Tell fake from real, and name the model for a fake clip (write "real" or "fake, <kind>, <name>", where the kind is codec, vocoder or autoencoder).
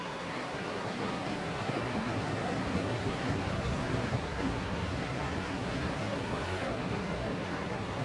fake, codec, SNAC